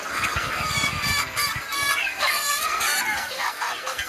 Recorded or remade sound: remade